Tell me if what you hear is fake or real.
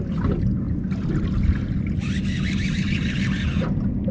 real